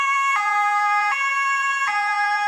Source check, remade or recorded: remade